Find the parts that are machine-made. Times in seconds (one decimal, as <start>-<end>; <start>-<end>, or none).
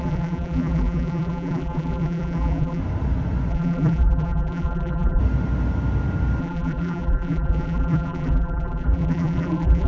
0.0-2.8; 3.5-5.2; 6.4-9.9